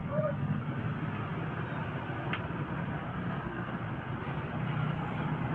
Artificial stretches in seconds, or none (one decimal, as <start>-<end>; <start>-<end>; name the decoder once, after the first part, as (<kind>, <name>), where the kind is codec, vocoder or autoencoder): 0.0-0.6 (codec, SNAC); 3.1-3.8